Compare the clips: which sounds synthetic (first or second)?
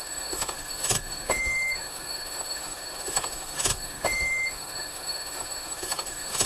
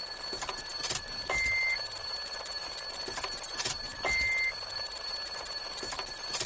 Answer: first